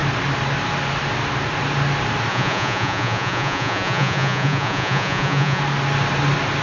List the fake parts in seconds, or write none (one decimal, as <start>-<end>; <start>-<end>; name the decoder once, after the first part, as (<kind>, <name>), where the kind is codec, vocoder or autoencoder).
2.3-5.6 (vocoder, Vocos)